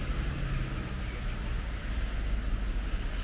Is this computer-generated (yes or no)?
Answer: no